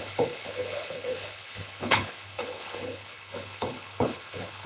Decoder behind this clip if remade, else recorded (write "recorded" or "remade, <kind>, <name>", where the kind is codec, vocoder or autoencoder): remade, codec, HILCodec